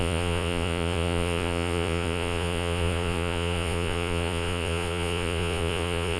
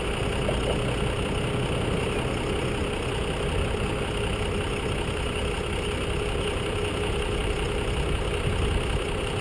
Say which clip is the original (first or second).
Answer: second